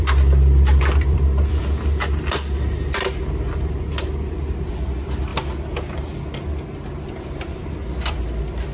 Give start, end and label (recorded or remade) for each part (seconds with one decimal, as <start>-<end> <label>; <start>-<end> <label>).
0.0-2.0 remade; 2.0-4.7 recorded; 4.7-5.3 remade; 5.3-6.5 recorded; 6.5-7.6 remade; 7.6-8.1 recorded; 8.1-8.7 remade